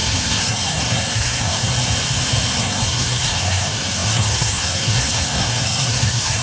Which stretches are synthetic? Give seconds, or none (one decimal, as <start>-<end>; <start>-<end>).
0.0-1.7; 2.5-6.4